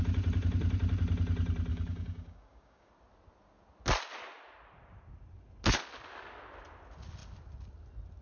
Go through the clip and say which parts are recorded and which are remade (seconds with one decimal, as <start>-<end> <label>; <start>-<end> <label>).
0.0-1.7 recorded; 1.7-2.9 remade; 2.9-8.2 recorded